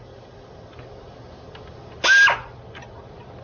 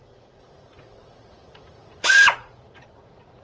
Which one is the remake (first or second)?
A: second